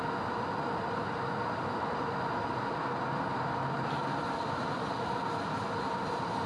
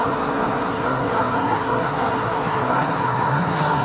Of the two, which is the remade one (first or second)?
second